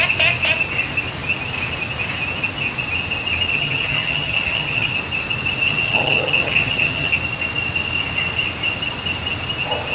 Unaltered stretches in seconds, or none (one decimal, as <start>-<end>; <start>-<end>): 0.0-3.5; 4.9-5.7; 7.1-9.9